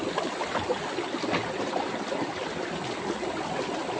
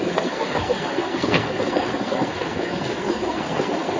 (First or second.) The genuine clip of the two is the first